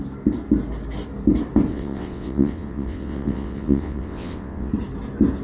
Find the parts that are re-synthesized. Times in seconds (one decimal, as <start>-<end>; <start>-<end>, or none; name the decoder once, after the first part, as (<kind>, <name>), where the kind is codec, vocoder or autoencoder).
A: 1.7-4.7 (vocoder, WaveNeXt)